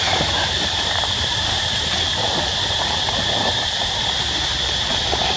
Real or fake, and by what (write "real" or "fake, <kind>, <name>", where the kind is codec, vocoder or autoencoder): fake, vocoder, BigVGAN v2